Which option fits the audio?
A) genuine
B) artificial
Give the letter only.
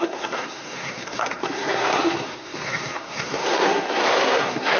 B